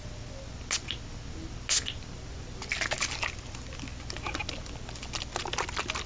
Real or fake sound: real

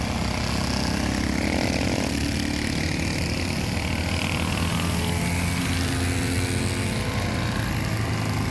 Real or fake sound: real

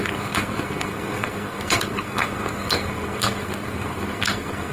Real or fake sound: fake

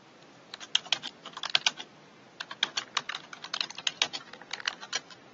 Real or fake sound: real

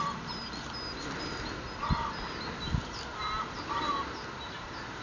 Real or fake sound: real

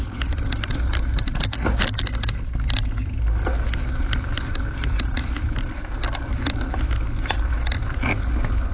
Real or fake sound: fake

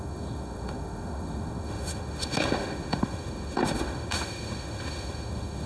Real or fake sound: fake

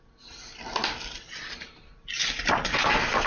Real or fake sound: real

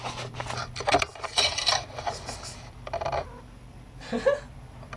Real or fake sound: real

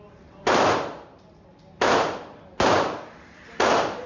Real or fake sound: real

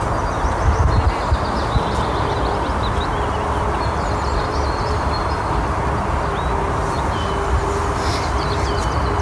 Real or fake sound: real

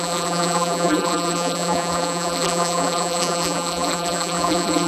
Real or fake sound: fake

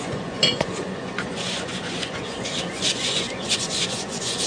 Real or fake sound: fake